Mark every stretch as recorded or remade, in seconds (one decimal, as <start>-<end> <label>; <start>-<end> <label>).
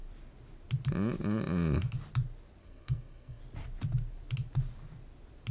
0.0-2.6 recorded; 2.6-3.4 remade; 3.4-5.5 recorded